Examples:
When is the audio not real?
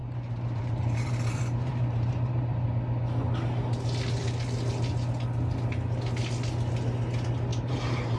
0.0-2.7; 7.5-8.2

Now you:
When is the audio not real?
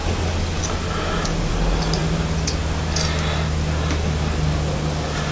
none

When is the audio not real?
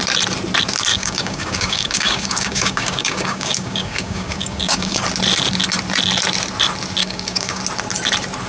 0.9-5.0; 7.0-7.6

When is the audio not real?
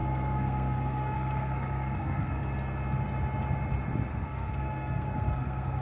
0.0-2.4; 4.1-5.8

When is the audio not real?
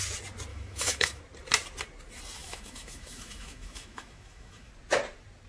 0.5-1.2; 2.4-4.7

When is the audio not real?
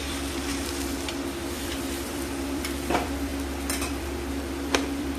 0.0-0.5; 1.4-3.3; 3.9-5.2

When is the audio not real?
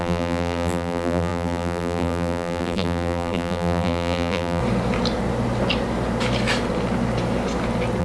0.0-4.6